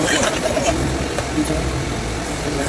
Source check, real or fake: fake